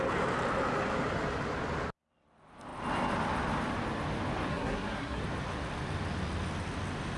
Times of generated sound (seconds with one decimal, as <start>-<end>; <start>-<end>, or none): 4.5-5.2